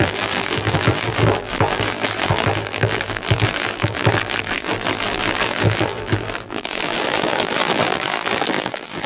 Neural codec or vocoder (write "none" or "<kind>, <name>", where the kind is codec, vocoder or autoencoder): vocoder, BigVGAN v2